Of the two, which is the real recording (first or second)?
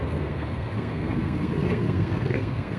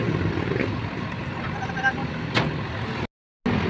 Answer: second